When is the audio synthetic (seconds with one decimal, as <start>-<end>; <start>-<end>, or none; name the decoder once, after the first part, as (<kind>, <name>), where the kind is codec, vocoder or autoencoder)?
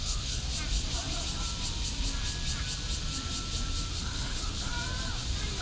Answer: 0.0-0.5 (codec, HILCodec); 3.9-4.7